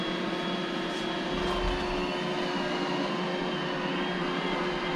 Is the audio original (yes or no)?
yes